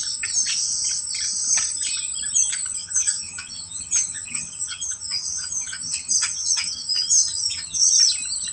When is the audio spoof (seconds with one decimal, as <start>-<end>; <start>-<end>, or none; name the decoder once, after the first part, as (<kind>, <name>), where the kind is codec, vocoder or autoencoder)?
2.8-7.9 (vocoder, HiFi-GAN)